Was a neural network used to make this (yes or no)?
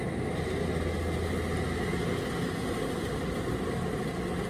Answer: no